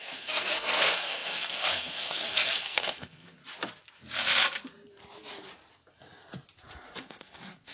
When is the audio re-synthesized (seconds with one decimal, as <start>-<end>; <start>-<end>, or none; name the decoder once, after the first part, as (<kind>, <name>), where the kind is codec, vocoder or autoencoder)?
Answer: 0.0-3.4 (codec, SNAC); 7.0-7.7

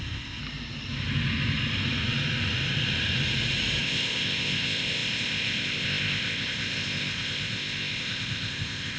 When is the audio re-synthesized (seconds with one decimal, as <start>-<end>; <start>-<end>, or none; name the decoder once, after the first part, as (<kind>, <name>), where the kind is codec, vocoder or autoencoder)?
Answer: 0.0-0.4 (codec, ZipCodec); 3.8-9.0

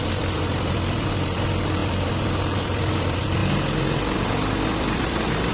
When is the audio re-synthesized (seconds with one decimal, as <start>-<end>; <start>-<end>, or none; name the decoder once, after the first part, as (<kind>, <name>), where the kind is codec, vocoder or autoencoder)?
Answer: 0.0-1.8 (vocoder, BigVGAN v2); 2.4-3.4; 4.0-5.5